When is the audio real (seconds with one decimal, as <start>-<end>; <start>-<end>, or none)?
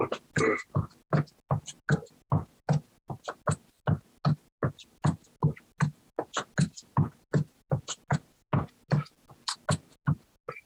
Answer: 0.0-10.7